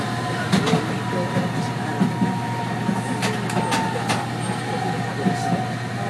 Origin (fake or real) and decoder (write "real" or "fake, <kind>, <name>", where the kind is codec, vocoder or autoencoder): real